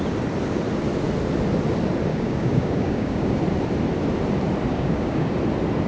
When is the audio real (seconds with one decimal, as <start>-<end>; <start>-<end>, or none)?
0.0-2.1; 3.4-4.7; 5.3-5.9